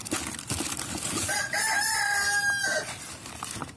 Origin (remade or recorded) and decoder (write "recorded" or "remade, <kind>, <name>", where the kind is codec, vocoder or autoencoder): recorded